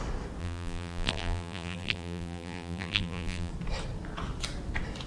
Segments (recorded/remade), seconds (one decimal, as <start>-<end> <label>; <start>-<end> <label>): 0.0-0.4 recorded; 0.4-3.5 remade; 3.5-5.1 recorded